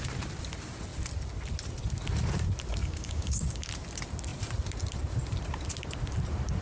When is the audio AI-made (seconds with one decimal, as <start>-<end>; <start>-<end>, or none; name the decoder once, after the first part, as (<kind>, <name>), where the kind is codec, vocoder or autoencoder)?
2.8-3.7 (codec, DAC)